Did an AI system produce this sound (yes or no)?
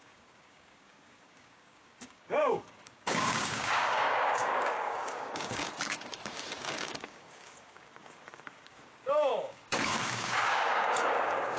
yes